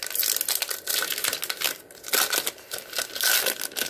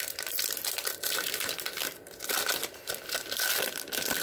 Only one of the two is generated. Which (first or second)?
second